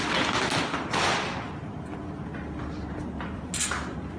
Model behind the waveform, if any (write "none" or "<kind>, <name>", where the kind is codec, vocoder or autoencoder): none